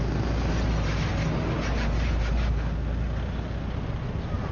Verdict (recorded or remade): recorded